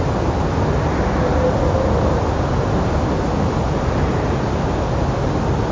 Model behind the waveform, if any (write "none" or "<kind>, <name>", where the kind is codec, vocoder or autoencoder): none